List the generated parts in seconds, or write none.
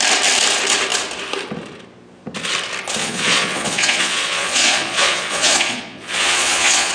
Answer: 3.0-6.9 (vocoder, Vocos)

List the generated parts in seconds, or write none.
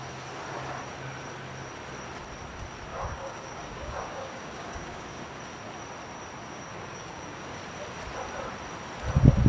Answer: 2.9-5.4 (codec, DAC); 6.4-7.6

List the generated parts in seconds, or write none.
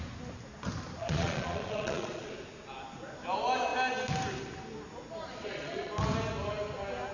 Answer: 1.0-2.3 (vocoder, Vocos); 5.3-5.9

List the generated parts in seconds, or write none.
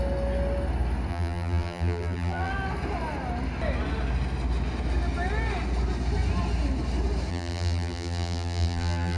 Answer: 1.1-2.5 (vocoder, BigVGAN v2); 7.3-9.2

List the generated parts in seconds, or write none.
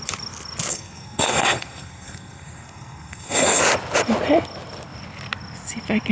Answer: 0.7-3.6 (codec, SNAC)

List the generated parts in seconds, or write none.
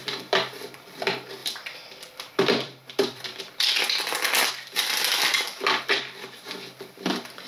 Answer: 1.4-4.5 (vocoder, BigVGAN v2); 5.2-6.0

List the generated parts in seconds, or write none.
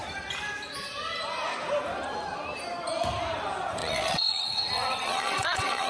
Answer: 3.8-5.9 (vocoder, WaveNeXt)